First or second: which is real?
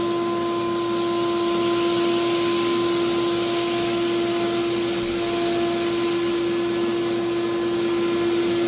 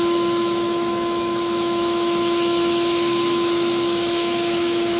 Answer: first